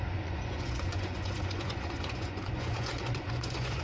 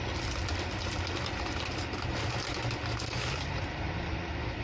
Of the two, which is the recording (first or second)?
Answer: second